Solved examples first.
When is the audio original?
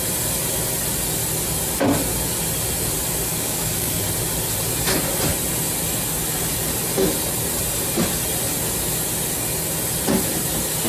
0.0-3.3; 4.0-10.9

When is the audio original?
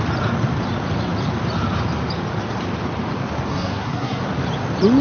0.0-3.5; 4.2-5.0